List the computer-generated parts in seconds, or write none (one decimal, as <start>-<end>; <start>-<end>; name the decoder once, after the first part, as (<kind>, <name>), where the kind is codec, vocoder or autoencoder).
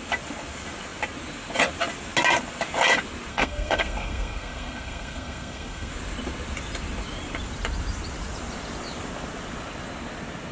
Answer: 3.3-5.9 (codec, SNAC)